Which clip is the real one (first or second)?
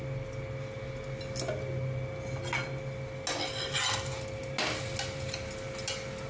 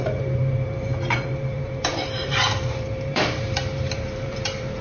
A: first